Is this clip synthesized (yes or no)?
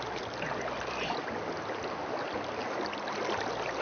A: no